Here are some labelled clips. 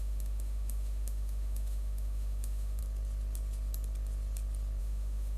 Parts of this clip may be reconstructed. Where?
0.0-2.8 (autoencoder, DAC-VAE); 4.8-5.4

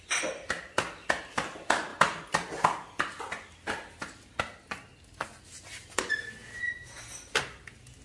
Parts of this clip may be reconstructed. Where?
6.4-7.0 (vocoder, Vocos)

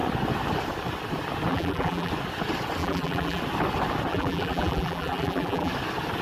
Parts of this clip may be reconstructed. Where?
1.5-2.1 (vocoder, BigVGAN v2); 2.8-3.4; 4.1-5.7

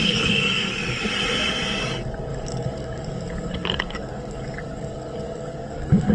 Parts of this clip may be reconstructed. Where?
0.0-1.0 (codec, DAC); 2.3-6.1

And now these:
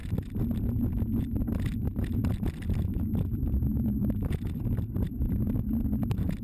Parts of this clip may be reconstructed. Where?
2.2-5.6 (vocoder, BigVGAN v2)

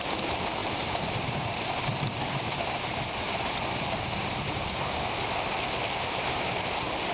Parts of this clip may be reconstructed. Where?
0.6-4.9 (vocoder, BigVGAN v2)

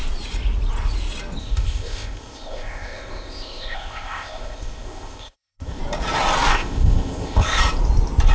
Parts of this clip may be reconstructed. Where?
1.4-5.8 (codec, ZipCodec); 6.5-7.6

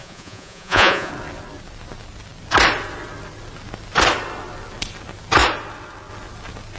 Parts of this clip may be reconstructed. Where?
0.0-1.1 (vocoder, Vocos)